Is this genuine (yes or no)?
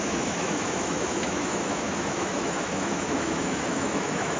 no